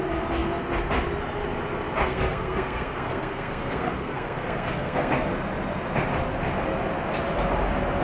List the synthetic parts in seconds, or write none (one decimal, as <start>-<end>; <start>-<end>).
2.0-5.3